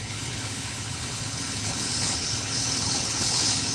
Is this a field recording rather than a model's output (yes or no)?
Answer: no